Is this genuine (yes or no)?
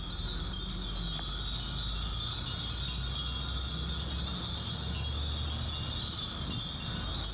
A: yes